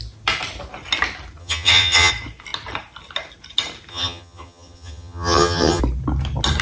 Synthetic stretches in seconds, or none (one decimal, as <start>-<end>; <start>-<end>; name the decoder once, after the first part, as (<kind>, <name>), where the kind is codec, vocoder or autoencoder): 1.4-2.1 (vocoder, HiFi-GAN); 3.9-5.8